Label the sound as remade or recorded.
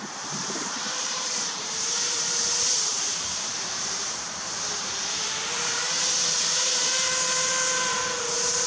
remade